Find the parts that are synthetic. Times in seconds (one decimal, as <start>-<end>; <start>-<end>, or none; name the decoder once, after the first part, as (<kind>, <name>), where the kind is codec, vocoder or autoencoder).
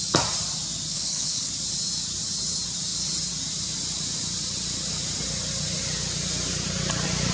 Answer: 0.9-1.5 (codec, HILCodec)